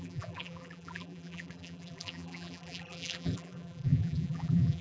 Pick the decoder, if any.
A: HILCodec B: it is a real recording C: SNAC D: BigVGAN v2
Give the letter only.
D